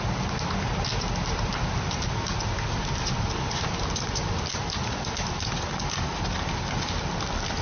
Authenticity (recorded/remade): recorded